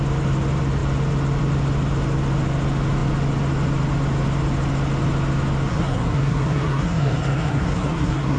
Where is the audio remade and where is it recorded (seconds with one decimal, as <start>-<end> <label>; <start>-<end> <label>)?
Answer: 0.0-5.7 recorded; 5.7-8.4 remade